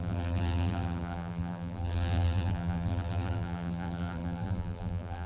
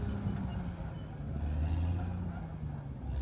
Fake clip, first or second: first